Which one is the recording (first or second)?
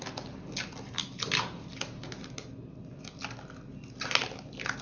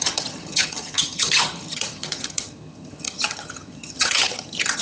first